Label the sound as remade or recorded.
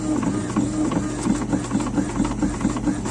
recorded